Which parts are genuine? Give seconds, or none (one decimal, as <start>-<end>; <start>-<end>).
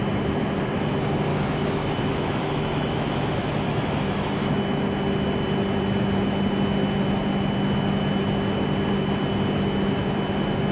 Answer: 0.0-1.3; 4.5-10.7